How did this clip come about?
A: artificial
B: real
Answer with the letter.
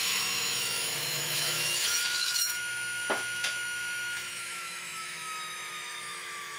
A